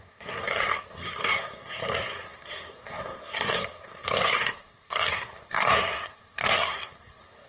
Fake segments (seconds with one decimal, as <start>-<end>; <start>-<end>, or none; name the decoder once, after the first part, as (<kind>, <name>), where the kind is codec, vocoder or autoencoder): 0.0-7.5 (codec, SNAC)